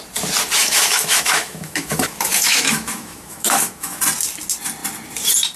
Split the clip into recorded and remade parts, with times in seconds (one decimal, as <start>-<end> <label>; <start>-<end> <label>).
0.0-0.6 recorded; 0.6-4.0 remade; 4.0-5.6 recorded